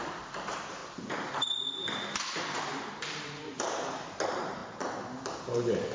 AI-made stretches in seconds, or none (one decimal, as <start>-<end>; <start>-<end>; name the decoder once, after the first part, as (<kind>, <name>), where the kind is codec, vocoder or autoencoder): 0.0-0.8 (vocoder, BigVGAN v2); 2.5-4.6; 5.4-5.9